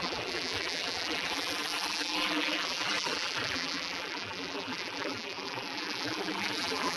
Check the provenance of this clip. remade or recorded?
remade